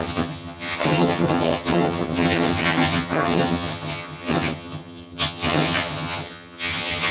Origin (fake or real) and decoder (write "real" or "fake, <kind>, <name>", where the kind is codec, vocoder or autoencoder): fake, vocoder, HiFi-GAN